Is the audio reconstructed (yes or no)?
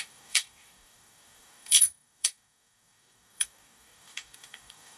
yes